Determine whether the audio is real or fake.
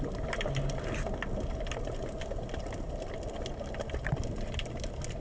real